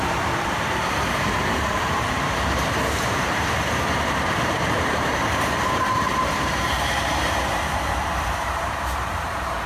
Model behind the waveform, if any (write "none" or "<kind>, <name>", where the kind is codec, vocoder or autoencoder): vocoder, BigVGAN v2